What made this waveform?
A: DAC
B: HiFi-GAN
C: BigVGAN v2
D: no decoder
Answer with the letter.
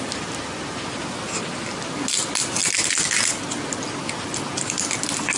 D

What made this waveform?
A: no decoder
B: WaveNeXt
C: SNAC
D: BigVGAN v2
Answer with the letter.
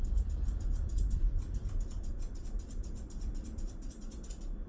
D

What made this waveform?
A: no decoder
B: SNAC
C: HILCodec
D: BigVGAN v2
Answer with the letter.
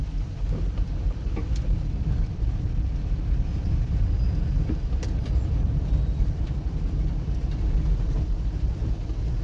D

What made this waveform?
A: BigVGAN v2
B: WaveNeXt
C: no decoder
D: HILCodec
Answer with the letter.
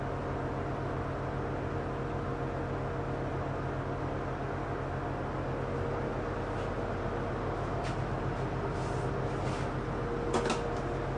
C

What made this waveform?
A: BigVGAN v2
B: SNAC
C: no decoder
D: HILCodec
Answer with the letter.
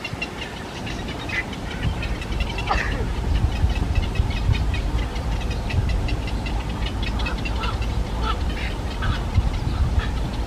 C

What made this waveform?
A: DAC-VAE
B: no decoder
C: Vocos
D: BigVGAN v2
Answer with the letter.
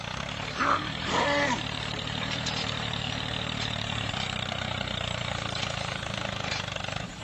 D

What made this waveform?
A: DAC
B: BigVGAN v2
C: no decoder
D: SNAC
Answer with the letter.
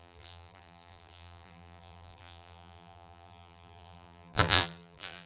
B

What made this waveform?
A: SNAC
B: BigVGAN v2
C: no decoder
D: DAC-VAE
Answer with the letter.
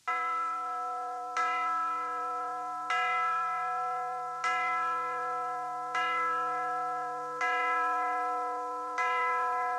C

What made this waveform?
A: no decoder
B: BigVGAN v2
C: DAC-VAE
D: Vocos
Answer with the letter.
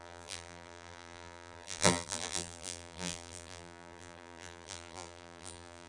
B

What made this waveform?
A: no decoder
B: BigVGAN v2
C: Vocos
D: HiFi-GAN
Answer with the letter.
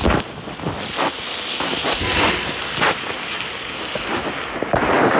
A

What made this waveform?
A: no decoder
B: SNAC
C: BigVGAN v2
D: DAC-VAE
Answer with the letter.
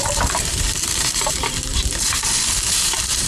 C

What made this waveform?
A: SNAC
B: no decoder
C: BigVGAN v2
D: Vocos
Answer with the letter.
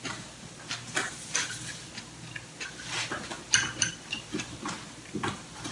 C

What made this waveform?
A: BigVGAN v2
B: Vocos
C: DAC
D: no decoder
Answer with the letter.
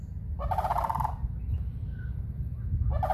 D